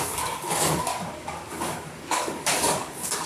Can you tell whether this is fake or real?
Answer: fake